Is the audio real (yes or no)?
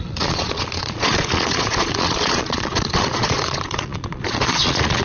no